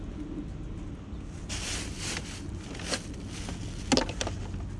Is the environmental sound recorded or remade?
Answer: recorded